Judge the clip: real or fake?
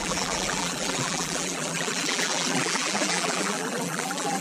fake